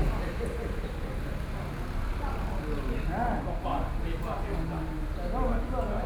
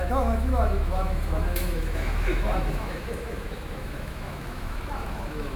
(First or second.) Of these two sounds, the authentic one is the first